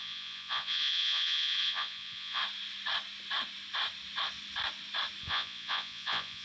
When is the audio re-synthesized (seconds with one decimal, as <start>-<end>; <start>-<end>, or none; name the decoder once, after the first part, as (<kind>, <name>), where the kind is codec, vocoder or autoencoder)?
0.0-2.4 (vocoder, Vocos); 5.2-6.4